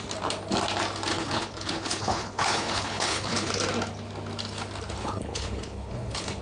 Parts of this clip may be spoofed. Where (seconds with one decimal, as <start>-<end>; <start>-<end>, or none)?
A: 1.1-3.5; 5.0-6.4